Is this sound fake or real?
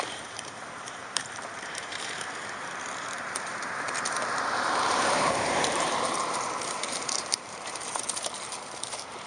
fake